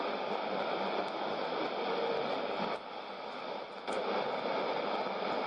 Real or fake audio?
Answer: real